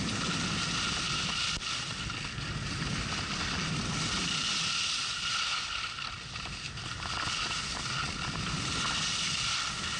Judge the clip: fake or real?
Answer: real